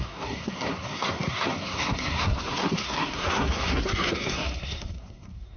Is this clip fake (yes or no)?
yes